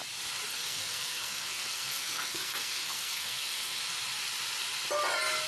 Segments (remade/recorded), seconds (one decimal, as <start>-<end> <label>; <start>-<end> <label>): 0.0-0.5 recorded; 0.5-3.8 remade; 3.8-5.5 recorded